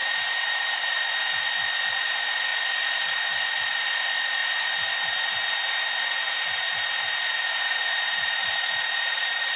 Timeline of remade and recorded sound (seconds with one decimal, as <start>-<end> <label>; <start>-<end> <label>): 0.0-0.8 remade; 0.8-9.6 recorded